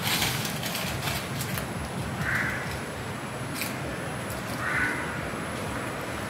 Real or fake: real